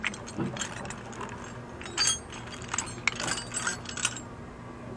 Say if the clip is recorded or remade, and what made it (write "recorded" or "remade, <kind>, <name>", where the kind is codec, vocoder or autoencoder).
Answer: recorded